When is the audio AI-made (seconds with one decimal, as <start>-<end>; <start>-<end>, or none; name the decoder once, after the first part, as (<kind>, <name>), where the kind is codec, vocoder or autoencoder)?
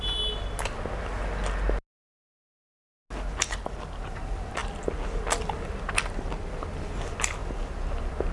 none